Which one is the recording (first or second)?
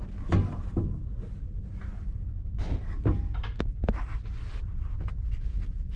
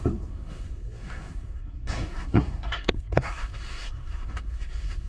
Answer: first